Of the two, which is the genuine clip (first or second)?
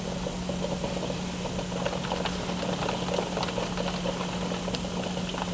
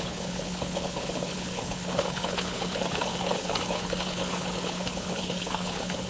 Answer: first